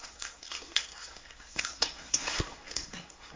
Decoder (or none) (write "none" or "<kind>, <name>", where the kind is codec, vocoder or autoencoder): codec, SNAC